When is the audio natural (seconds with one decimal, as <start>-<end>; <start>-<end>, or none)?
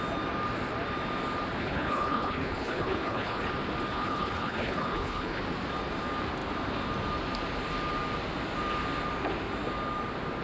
0.0-1.6; 3.5-3.9; 5.4-10.4